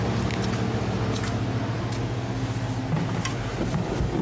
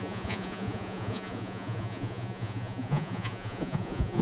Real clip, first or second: first